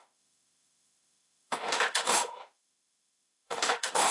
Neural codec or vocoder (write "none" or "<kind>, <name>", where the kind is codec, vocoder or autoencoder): autoencoder, DAC-VAE